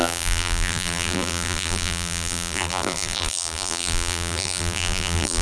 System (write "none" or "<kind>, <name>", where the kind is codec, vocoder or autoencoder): vocoder, BigVGAN v2